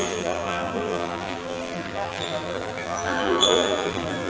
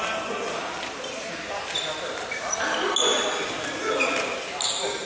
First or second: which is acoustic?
second